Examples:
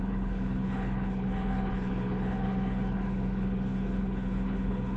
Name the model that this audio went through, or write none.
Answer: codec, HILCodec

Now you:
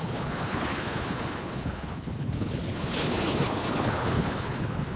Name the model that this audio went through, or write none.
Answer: codec, HILCodec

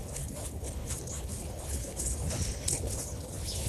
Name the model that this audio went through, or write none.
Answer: codec, HILCodec